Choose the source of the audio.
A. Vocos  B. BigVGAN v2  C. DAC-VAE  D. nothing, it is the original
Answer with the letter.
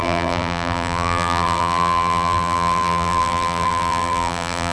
B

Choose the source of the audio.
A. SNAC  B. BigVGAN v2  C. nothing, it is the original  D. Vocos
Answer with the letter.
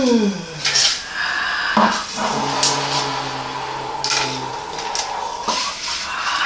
C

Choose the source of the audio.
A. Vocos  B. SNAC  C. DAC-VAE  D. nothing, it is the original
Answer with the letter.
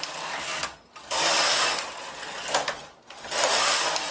D